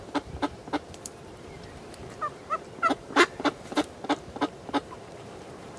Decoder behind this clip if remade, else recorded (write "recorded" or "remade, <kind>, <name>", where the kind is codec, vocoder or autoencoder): remade, vocoder, BigVGAN v2